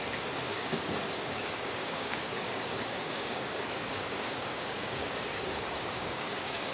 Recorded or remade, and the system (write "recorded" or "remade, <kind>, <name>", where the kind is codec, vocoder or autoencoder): remade, codec, DAC